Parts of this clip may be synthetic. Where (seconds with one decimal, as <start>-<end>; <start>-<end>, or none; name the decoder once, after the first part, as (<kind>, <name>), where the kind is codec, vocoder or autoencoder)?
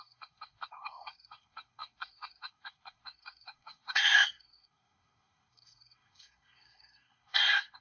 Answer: 0.0-7.8 (codec, SNAC)